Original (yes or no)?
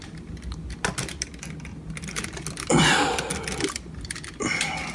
yes